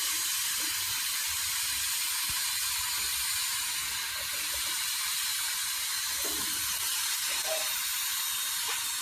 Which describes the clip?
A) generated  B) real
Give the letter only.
B